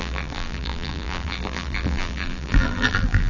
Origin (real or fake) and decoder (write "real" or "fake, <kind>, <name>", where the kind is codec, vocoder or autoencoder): fake, vocoder, BigVGAN v2